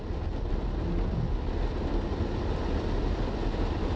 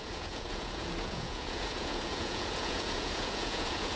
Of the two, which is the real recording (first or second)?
first